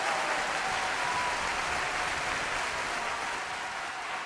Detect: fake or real real